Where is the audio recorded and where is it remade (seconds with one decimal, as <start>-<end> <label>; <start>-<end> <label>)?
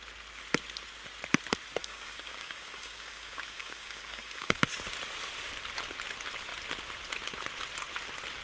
0.0-1.8 recorded; 1.8-4.6 remade; 4.6-8.4 recorded